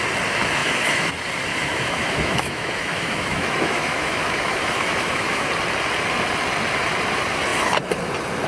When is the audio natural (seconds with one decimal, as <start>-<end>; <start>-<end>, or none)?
0.0-0.6; 1.1-1.5; 5.5-8.5